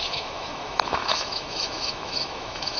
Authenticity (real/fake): fake